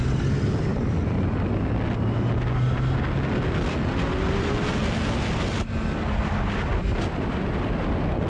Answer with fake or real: real